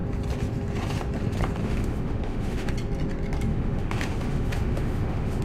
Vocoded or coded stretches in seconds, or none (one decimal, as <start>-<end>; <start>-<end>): 1.6-2.7; 3.5-5.4